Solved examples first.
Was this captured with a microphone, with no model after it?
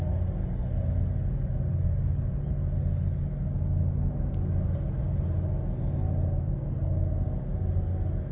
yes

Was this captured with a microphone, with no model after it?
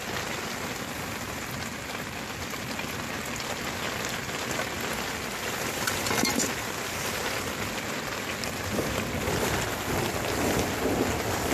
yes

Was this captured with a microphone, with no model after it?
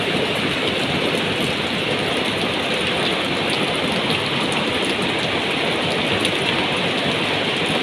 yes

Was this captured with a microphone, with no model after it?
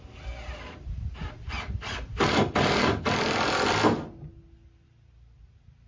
yes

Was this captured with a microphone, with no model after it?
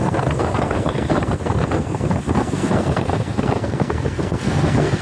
no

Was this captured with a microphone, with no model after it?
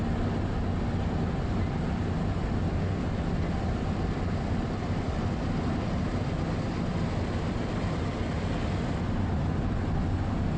yes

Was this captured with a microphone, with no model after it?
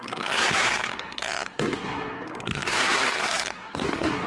no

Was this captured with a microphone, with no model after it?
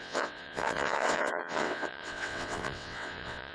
no